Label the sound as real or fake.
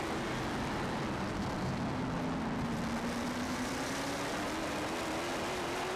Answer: real